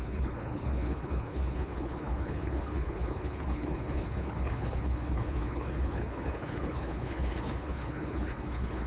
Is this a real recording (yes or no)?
no